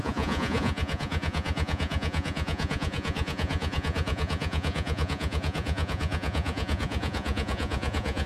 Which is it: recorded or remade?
remade